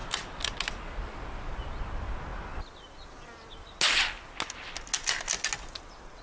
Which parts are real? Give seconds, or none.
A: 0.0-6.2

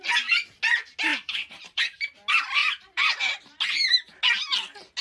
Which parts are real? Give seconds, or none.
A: 0.0-1.1; 1.8-2.6; 3.2-5.0

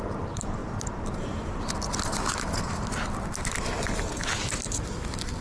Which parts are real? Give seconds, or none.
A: 0.0-0.6; 1.7-5.4

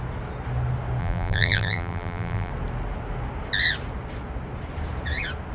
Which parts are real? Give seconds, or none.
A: 0.0-1.0; 2.5-5.5

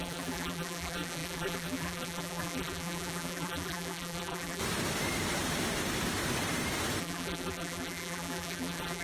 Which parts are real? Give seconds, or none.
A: 4.6-7.0

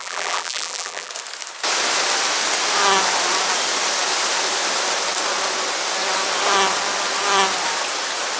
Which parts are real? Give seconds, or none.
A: 1.1-8.4